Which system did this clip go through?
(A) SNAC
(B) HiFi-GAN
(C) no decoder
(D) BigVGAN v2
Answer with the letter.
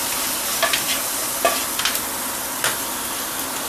C